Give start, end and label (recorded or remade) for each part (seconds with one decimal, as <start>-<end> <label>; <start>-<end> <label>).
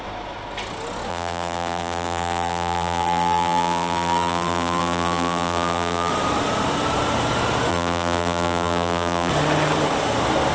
0.0-1.1 recorded; 1.1-6.1 remade; 6.1-7.7 recorded; 7.7-9.3 remade; 9.3-10.5 recorded